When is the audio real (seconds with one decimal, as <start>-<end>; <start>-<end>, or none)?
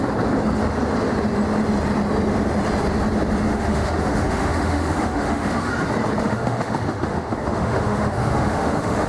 0.0-3.5; 5.7-6.2